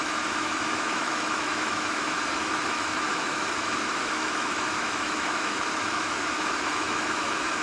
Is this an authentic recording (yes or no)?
no